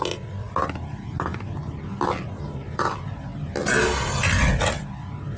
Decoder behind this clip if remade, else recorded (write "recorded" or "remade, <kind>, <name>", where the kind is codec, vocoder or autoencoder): recorded